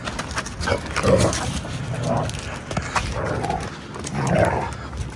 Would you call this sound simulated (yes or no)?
no